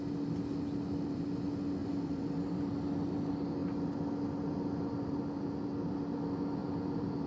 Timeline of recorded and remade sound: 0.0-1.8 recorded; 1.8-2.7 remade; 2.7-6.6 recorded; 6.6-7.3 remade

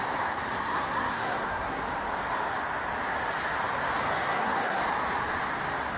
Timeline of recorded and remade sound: 0.0-0.6 recorded; 0.6-1.8 remade; 1.8-4.1 recorded; 4.1-4.8 remade; 4.8-6.0 recorded